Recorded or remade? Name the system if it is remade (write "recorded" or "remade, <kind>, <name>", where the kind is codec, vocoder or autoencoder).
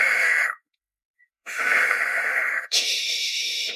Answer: remade, autoencoder, DAC-VAE